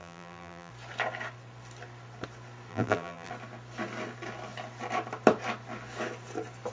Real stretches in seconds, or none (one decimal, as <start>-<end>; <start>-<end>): 0.7-2.7; 3.3-6.7